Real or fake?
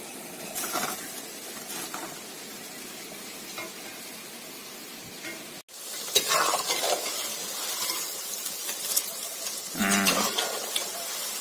real